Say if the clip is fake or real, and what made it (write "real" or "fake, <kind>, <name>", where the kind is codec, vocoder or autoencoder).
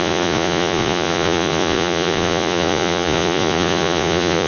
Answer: fake, vocoder, Vocos